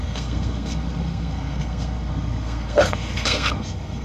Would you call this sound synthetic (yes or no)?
yes